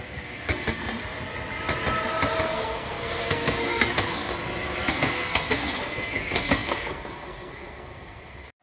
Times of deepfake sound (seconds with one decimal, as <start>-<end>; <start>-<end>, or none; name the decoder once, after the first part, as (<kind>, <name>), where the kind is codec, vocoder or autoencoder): 0.0-0.8 (codec, SNAC); 2.4-4.3; 4.9-8.6